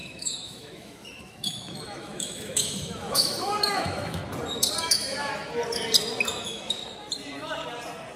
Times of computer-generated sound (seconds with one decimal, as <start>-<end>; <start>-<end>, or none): 0.0-4.2; 4.8-5.3; 6.3-6.8